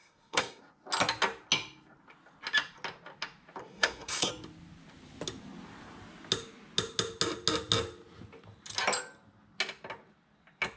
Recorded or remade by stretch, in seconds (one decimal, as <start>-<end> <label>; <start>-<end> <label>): 0.0-0.6 remade; 0.6-3.6 recorded; 3.6-4.3 remade; 4.3-10.8 recorded